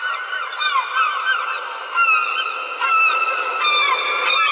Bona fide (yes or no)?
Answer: yes